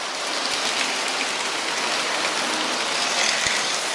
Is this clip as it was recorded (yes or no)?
yes